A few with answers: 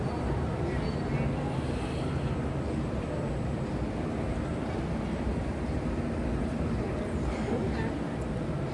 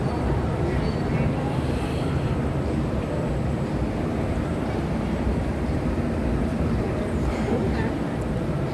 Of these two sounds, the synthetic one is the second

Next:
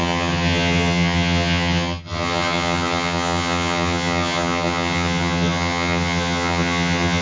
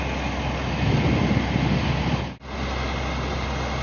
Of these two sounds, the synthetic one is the first